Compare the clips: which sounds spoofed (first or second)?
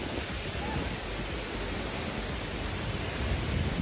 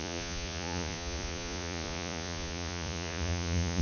second